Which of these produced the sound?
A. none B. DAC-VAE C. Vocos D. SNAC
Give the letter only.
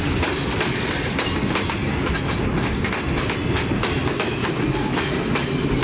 A